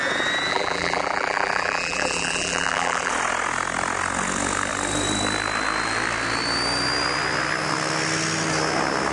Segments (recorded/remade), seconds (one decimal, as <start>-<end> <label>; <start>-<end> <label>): 0.0-0.5 recorded; 0.5-3.1 remade; 3.1-9.1 recorded